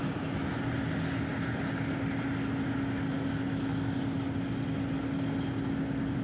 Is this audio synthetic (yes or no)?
no